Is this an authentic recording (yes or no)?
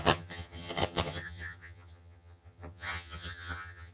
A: no